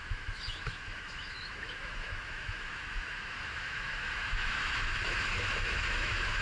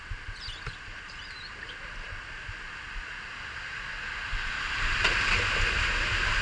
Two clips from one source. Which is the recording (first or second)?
second